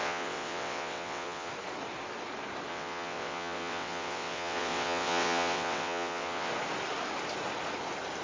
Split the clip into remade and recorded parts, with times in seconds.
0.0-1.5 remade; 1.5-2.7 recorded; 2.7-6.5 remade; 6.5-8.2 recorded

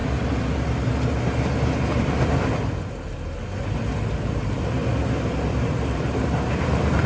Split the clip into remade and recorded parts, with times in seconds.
0.0-4.3 recorded; 4.3-4.8 remade; 4.8-5.4 recorded; 5.4-7.1 remade

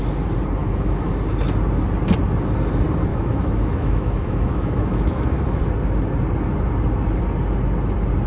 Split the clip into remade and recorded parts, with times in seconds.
0.0-0.6 recorded; 0.6-1.1 remade; 1.1-3.1 recorded; 3.1-5.6 remade; 5.6-8.3 recorded

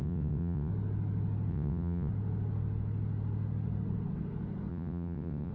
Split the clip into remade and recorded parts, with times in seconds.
0.0-0.7 remade; 0.7-1.5 recorded; 1.5-2.1 remade; 2.1-4.7 recorded; 4.7-5.5 remade